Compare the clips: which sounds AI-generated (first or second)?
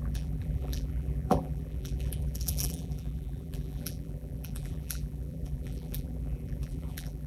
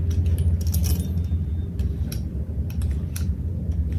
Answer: first